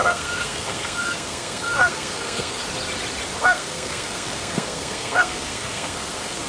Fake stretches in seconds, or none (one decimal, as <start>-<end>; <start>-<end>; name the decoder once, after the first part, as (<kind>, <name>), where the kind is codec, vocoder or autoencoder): 0.0-2.6 (codec, SNAC); 3.4-6.5